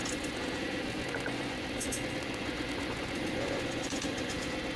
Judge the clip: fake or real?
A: fake